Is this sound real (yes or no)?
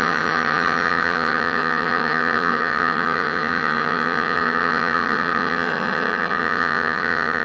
no